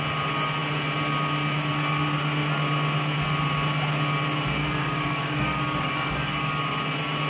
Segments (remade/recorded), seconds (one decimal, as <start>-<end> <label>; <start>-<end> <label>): 0.0-4.6 recorded; 4.6-6.6 remade; 6.6-7.3 recorded